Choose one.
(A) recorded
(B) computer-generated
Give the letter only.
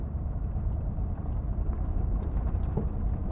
B